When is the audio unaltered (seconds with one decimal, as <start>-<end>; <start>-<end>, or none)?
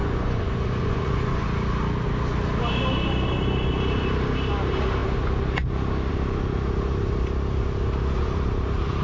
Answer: 1.4-9.0